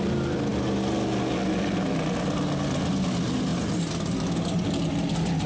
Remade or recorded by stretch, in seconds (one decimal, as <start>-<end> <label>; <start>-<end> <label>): 0.0-5.5 recorded